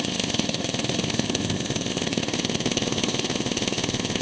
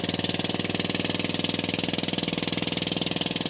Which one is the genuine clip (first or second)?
second